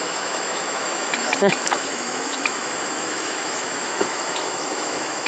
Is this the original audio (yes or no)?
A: no